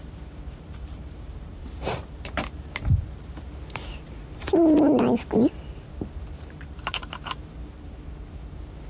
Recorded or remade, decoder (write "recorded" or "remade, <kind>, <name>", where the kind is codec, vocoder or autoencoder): remade, vocoder, BigVGAN v2